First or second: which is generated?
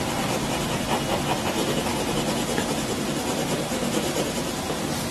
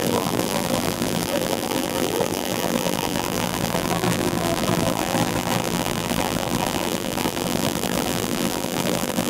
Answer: second